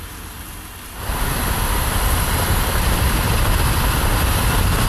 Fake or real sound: real